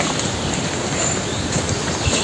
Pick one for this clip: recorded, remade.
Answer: recorded